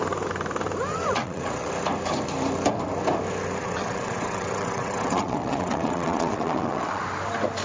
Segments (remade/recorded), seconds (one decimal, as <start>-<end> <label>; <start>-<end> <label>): 0.0-0.9 recorded; 0.9-1.7 remade; 1.7-3.6 recorded; 3.6-7.0 remade; 7.0-7.6 recorded